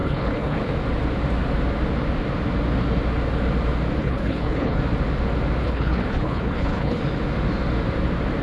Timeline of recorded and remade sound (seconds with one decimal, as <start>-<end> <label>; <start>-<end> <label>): 0.0-0.7 remade; 0.7-4.0 recorded; 4.0-4.8 remade; 4.8-5.6 recorded; 5.6-7.0 remade; 7.0-8.4 recorded